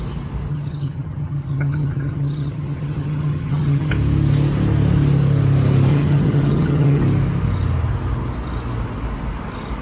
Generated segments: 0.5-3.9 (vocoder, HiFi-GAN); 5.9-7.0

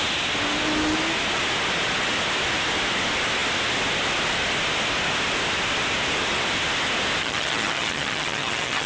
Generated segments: 7.2-8.9 (vocoder, HiFi-GAN)